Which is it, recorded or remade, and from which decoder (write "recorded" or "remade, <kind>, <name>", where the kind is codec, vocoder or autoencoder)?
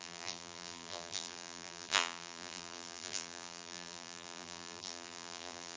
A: remade, vocoder, BigVGAN v2